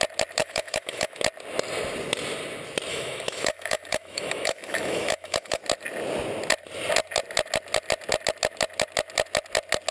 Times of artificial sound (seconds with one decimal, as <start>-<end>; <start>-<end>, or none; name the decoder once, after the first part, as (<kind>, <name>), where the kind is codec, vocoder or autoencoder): 0.4-1.2 (autoencoder, DAC-VAE); 2.9-5.6